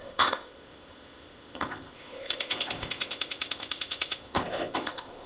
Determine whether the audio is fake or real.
fake